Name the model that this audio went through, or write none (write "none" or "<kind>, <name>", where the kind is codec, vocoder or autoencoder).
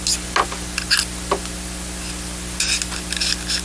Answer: none